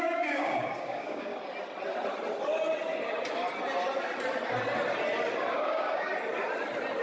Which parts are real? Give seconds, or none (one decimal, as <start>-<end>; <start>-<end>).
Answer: 1.3-5.5; 6.1-7.0